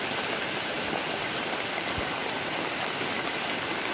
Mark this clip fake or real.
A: real